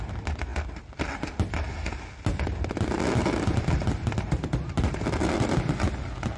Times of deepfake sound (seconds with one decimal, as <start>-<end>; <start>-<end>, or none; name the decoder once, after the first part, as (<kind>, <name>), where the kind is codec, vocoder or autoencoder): none